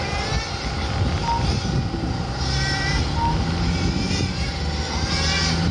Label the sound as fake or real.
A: real